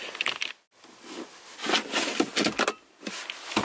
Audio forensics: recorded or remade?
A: recorded